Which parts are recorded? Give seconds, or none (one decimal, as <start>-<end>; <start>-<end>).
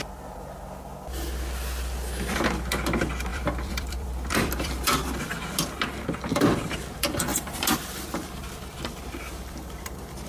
0.0-3.3; 5.2-7.3